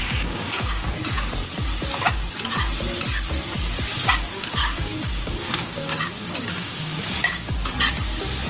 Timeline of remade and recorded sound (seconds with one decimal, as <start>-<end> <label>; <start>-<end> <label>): 0.0-0.9 remade; 0.9-3.9 recorded; 3.9-7.5 remade; 7.5-8.5 recorded

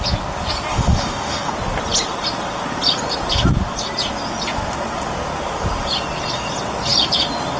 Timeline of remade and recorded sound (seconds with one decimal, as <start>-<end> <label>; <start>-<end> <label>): 0.0-0.7 recorded; 0.7-1.5 remade; 1.5-7.6 recorded

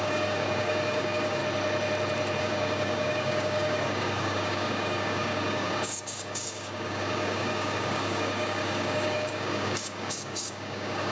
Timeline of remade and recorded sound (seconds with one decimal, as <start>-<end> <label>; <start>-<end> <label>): 0.0-1.4 remade; 1.4-2.4 recorded; 2.4-11.1 remade

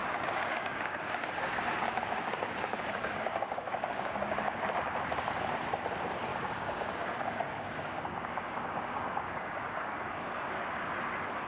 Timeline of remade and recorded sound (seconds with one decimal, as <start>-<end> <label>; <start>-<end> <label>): 0.0-4.6 remade; 4.6-6.3 recorded; 6.3-10.5 remade; 10.5-11.5 recorded

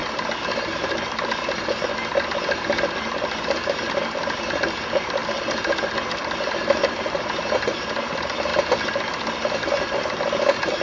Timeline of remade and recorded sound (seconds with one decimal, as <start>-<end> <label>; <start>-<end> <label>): 0.0-10.8 recorded

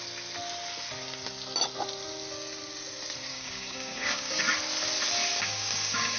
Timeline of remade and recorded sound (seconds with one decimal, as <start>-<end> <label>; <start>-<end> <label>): 0.0-3.3 recorded; 3.3-4.4 remade; 4.4-5.3 recorded; 5.3-6.2 remade